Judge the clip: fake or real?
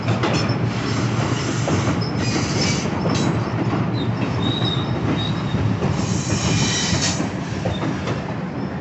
real